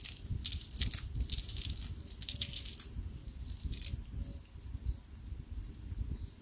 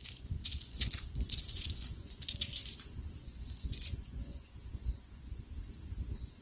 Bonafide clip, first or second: first